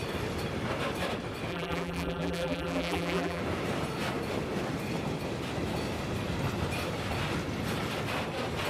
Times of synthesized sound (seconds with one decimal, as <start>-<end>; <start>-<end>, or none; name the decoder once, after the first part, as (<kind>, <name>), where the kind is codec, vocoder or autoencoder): 1.5-3.4 (vocoder, BigVGAN v2)